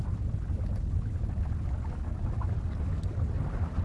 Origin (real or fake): real